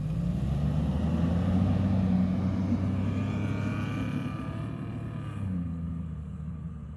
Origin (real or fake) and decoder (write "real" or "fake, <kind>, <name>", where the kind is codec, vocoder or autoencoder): real